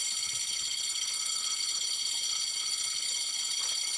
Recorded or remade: remade